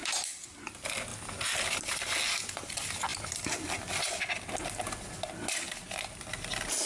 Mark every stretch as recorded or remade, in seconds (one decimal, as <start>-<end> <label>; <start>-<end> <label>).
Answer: 0.0-6.9 recorded